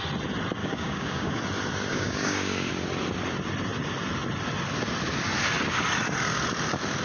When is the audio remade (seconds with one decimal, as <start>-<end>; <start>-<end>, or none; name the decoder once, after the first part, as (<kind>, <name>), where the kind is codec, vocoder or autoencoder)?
0.6-1.4 (codec, DAC); 1.9-2.7

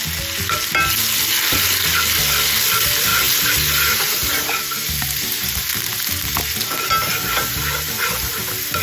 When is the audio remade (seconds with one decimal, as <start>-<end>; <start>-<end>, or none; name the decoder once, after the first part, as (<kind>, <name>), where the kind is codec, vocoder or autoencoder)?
3.1-8.3 (vocoder, BigVGAN v2)

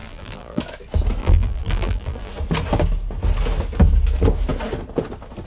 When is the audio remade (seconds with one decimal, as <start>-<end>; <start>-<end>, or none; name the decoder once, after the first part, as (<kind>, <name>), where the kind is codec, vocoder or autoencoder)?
0.0-0.6 (vocoder, BigVGAN v2); 1.2-2.3

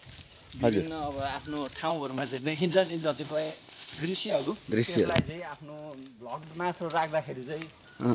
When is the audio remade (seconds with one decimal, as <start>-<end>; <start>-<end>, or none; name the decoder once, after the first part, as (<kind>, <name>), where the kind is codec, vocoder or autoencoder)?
1.9-4.5 (codec, ZipCodec)